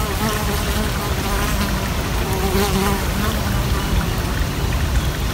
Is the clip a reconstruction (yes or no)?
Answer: no